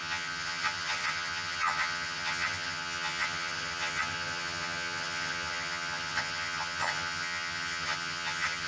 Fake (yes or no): yes